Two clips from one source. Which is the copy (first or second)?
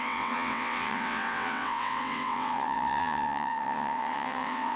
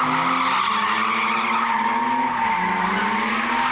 first